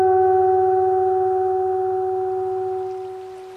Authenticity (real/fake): real